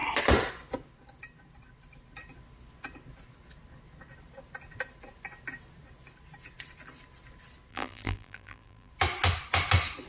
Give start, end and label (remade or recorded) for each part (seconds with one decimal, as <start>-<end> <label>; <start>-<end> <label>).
0.0-7.7 recorded; 7.7-8.9 remade; 8.9-10.1 recorded